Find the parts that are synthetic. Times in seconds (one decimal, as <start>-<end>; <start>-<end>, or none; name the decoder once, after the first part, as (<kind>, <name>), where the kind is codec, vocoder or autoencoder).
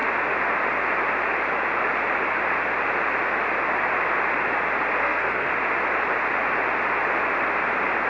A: 5.0-5.5 (codec, SNAC)